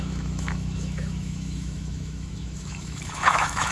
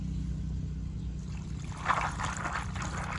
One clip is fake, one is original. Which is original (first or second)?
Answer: second